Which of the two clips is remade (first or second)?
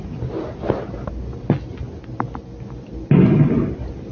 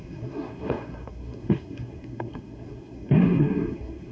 second